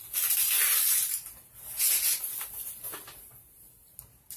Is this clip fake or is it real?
real